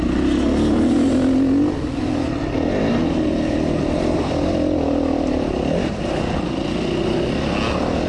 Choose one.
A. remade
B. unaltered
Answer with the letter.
B